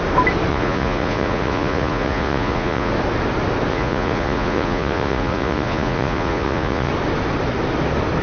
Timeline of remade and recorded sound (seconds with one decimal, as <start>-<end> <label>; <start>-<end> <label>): 0.0-0.5 recorded; 0.5-2.9 remade; 2.9-3.7 recorded; 3.7-6.9 remade; 6.9-8.2 recorded